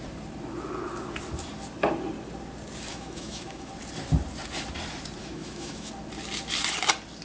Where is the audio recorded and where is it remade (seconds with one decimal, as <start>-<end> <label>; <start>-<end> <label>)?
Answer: 0.0-2.9 recorded; 2.9-3.7 remade; 3.7-5.2 recorded; 5.2-5.9 remade; 5.9-7.2 recorded